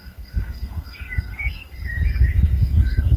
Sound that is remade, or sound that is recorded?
remade